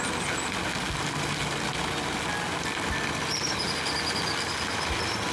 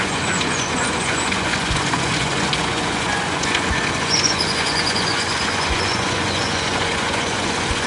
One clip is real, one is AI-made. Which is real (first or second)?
first